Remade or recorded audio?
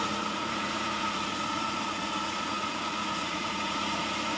remade